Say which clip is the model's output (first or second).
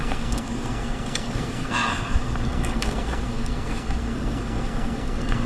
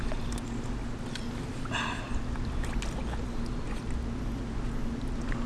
first